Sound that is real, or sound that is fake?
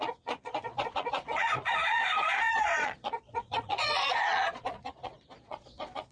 fake